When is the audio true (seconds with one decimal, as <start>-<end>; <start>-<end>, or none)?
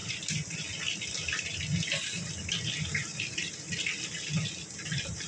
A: 0.0-5.3